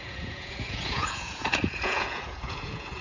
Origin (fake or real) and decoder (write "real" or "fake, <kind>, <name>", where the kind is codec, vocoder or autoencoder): fake, vocoder, Vocos